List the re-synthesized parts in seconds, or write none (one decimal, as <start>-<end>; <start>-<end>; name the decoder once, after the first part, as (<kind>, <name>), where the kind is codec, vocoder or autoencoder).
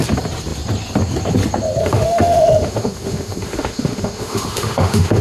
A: 1.8-5.2 (autoencoder, DAC-VAE)